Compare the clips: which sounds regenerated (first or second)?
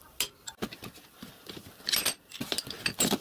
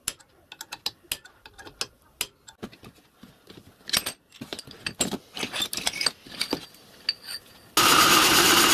first